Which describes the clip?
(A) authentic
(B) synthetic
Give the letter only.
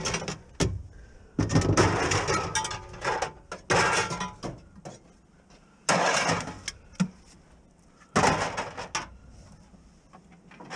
A